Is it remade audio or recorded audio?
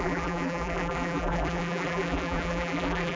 remade